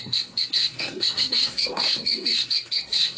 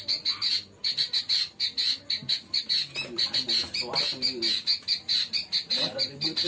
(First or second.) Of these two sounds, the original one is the second